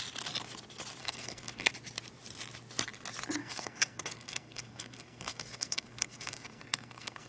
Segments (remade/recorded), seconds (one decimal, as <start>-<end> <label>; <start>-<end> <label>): 0.0-1.0 recorded; 1.0-1.7 remade; 1.7-3.4 recorded; 3.4-7.3 remade